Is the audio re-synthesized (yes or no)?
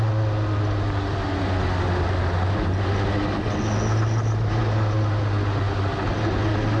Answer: no